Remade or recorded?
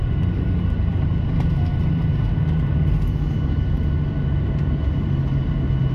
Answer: recorded